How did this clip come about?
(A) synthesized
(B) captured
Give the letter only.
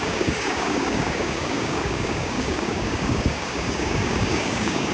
A